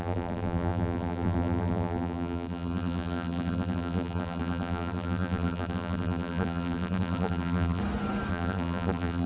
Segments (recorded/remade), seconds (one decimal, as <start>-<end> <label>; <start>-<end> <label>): 0.0-7.8 remade; 7.8-8.3 recorded; 8.3-9.3 remade